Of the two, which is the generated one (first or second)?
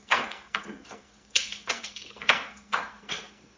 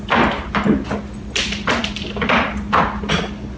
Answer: first